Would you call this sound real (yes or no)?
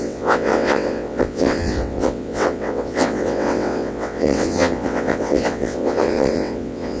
no